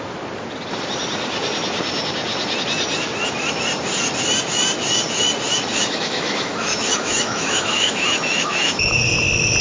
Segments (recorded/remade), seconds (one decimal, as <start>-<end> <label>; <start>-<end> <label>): 0.0-5.7 recorded; 5.7-9.0 remade; 9.0-9.6 recorded